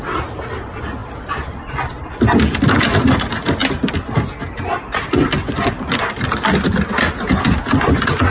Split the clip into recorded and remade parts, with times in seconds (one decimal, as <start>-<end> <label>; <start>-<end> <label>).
0.0-8.3 recorded